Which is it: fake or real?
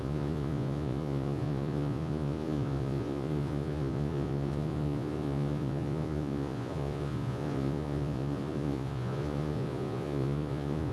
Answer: fake